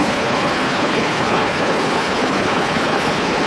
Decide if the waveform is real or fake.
fake